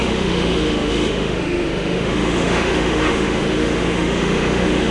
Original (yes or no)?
no